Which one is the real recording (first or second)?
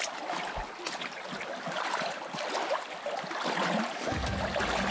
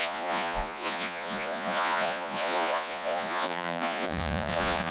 first